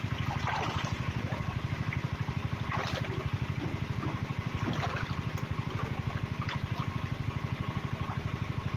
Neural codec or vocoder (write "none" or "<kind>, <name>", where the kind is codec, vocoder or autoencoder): none